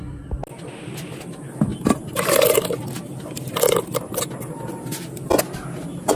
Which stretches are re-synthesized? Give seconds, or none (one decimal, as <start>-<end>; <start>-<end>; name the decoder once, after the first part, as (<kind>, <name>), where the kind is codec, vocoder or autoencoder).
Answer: none